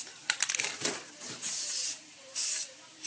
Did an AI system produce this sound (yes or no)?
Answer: yes